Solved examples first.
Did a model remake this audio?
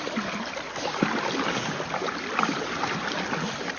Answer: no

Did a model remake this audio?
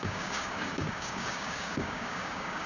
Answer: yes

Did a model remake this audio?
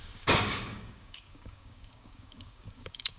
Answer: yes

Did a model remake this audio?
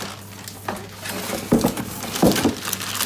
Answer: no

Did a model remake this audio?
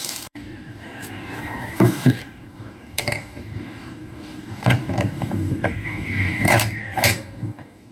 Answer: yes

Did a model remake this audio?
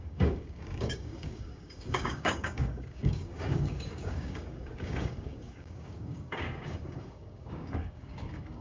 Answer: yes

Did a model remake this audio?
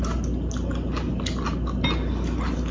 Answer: no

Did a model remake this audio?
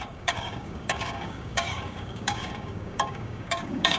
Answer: yes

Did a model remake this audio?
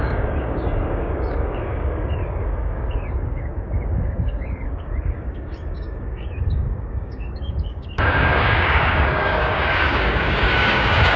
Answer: yes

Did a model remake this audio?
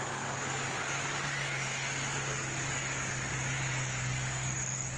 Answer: yes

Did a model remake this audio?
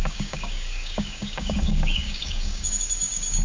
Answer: yes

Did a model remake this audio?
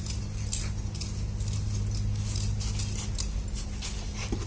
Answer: no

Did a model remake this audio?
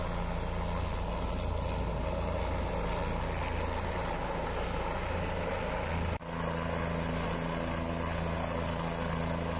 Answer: no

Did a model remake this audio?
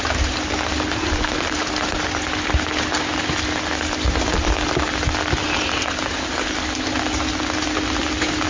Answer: no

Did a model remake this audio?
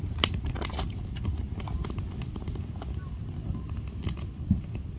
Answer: no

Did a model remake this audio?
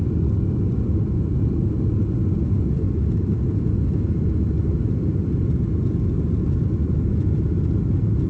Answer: no